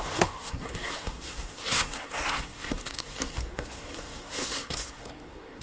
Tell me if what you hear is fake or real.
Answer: fake